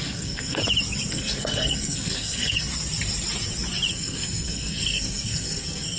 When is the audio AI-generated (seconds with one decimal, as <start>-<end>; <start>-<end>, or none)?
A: 0.0-0.6; 1.1-2.7; 3.9-6.0